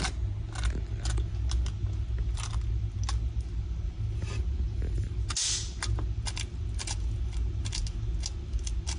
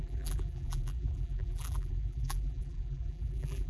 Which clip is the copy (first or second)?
second